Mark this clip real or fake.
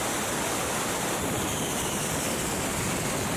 real